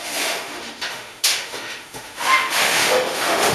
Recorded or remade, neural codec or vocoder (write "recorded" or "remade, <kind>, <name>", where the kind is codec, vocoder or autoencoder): remade, autoencoder, DAC-VAE